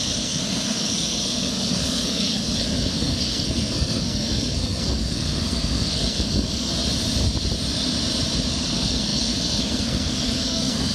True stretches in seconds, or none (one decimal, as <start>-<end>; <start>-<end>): 6.7-8.5